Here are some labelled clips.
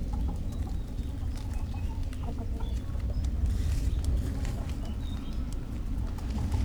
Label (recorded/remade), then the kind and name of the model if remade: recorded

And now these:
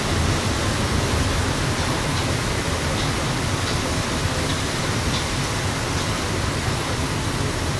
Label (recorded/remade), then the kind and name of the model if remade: recorded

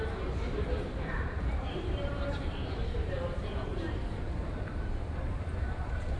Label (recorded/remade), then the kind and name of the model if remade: remade, vocoder, BigVGAN v2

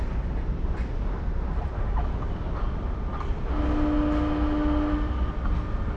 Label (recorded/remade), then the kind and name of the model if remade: recorded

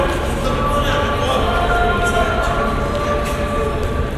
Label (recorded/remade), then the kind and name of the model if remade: recorded